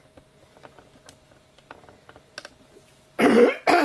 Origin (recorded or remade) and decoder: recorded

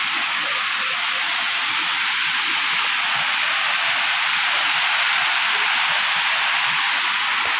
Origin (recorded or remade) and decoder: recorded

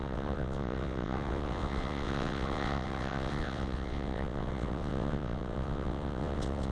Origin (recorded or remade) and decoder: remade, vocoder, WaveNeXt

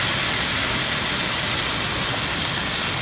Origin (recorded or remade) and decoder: recorded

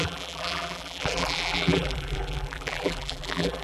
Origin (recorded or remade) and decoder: remade, vocoder, BigVGAN v2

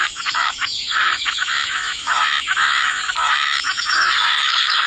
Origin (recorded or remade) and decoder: remade, autoencoder, DAC-VAE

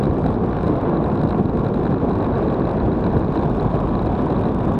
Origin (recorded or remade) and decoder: recorded